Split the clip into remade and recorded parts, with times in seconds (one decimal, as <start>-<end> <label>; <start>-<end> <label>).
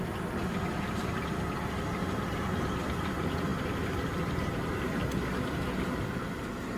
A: 0.0-2.0 recorded; 2.0-2.7 remade; 2.7-6.8 recorded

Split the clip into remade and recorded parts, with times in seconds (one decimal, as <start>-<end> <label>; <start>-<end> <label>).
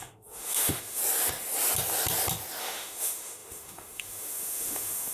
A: 0.0-1.0 remade; 1.0-2.6 recorded; 2.6-5.1 remade